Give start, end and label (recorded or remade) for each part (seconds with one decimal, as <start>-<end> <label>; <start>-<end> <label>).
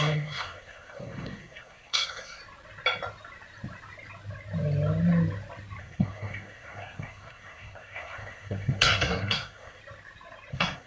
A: 0.0-2.4 remade; 2.4-5.8 recorded; 5.8-9.8 remade; 9.8-10.5 recorded; 10.5-10.9 remade